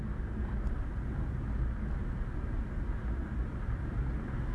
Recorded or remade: recorded